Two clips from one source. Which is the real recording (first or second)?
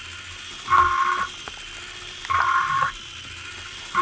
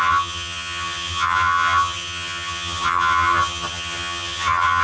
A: first